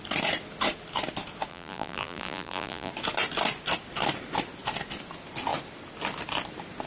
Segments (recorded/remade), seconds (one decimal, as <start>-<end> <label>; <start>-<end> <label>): 0.0-1.5 recorded; 1.5-2.9 remade; 2.9-6.9 recorded